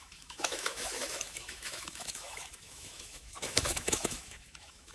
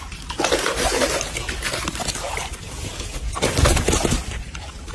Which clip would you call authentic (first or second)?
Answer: second